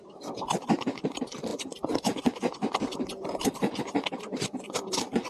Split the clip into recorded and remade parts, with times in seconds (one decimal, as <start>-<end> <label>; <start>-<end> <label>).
0.0-5.3 remade